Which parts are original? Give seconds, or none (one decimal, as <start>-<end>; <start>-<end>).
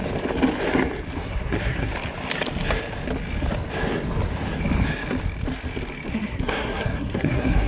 0.0-1.2; 1.9-6.1